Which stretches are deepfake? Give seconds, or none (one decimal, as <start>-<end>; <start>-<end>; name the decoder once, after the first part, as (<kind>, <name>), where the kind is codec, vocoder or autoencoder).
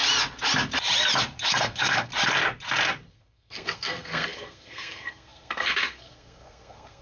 1.5-2.1 (codec, SNAC); 3.1-7.0